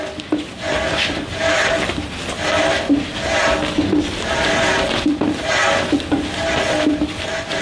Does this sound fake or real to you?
real